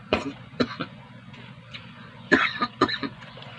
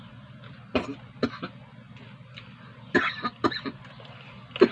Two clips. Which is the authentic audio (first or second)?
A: second